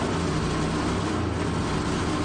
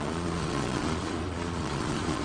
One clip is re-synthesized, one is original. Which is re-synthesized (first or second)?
second